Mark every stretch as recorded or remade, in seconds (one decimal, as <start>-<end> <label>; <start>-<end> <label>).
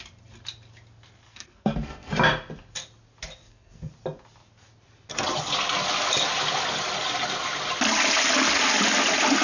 0.0-1.3 recorded; 1.3-2.1 remade; 2.1-3.4 recorded; 3.4-3.9 remade; 3.9-9.4 recorded